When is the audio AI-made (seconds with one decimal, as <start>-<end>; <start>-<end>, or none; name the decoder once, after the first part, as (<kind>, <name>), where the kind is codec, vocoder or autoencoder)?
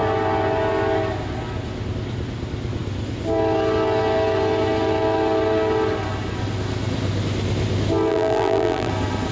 8.1-8.9 (vocoder, BigVGAN v2)